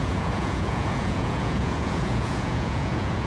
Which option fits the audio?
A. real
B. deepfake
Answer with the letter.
B